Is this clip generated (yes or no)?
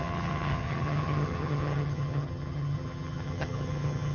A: yes